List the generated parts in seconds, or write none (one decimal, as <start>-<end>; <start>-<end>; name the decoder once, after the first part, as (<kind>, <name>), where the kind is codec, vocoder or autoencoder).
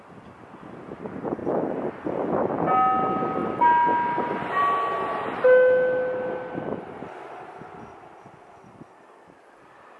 none